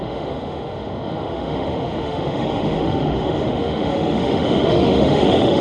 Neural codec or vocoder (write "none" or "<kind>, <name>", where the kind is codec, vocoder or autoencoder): autoencoder, DAC-VAE